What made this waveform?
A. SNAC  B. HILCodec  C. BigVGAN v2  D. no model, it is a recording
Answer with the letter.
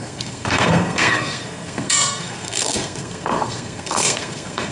A